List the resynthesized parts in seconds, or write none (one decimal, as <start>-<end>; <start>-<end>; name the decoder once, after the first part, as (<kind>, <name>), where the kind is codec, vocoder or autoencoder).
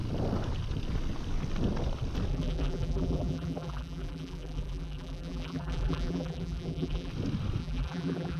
2.3-7.1 (vocoder, BigVGAN v2); 7.6-8.4